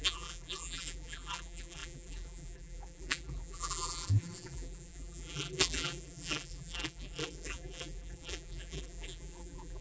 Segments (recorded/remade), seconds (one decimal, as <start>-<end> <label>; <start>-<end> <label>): 0.0-9.8 remade